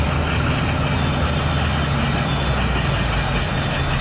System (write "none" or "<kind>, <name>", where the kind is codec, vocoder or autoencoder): none